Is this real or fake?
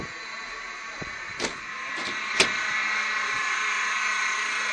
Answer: real